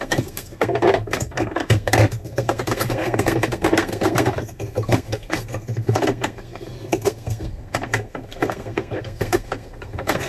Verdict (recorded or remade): remade